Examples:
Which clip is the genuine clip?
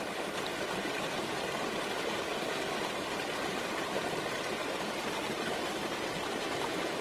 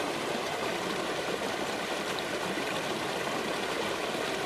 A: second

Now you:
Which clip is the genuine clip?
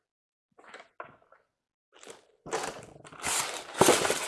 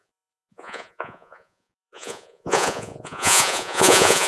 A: first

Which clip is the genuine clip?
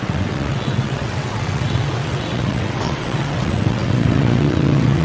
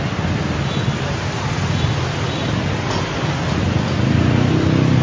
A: second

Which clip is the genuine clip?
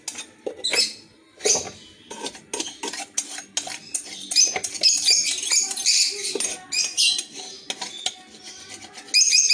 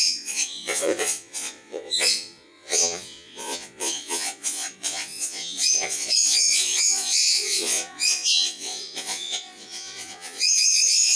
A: first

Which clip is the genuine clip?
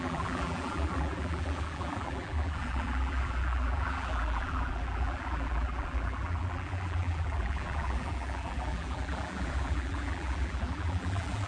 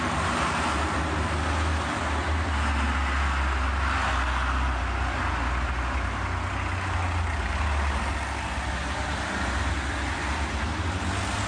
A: second